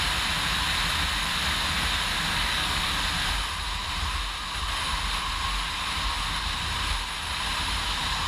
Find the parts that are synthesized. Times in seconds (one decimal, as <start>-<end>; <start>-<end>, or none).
2.3-2.9